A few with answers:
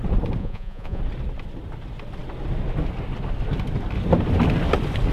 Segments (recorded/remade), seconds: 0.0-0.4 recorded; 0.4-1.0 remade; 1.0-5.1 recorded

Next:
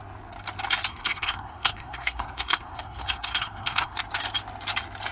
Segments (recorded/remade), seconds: 0.0-0.9 recorded; 0.9-4.0 remade; 4.0-5.1 recorded